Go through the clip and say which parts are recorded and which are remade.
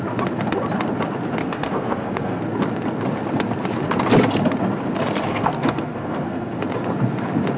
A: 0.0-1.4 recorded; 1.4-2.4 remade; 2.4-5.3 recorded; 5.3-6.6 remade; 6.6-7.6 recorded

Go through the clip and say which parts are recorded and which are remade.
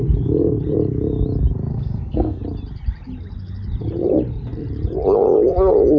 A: 0.0-1.7 recorded; 1.7-2.4 remade; 2.4-6.0 recorded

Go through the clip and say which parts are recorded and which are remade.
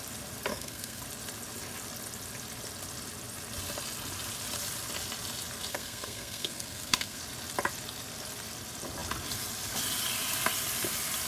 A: 0.0-0.5 recorded; 0.5-1.0 remade; 1.0-5.7 recorded; 5.7-7.2 remade; 7.2-11.3 recorded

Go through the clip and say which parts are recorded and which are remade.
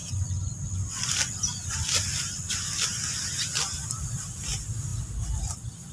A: 0.0-5.9 recorded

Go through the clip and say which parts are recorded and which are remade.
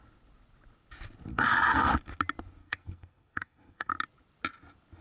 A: 0.0-1.3 recorded; 1.3-1.9 remade; 1.9-2.6 recorded; 2.6-3.9 remade; 3.9-5.0 recorded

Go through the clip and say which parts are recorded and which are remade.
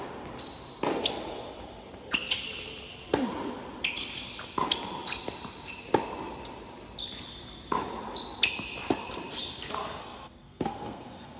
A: 0.0-10.0 recorded; 10.0-11.4 remade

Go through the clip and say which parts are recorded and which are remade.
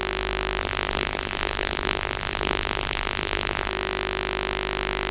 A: 0.0-0.6 recorded; 0.6-3.7 remade; 3.7-5.1 recorded